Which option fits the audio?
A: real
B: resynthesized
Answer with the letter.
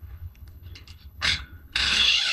B